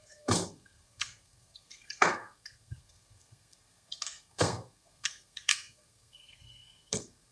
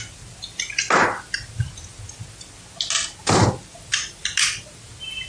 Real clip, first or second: second